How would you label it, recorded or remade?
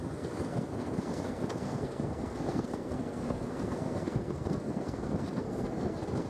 remade